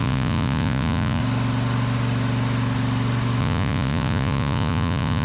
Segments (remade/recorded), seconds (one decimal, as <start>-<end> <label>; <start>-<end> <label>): 0.0-1.2 remade; 1.2-3.4 recorded; 3.4-5.2 remade